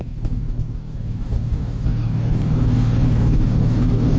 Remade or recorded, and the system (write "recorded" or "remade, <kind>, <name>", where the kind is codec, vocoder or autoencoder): remade, codec, DAC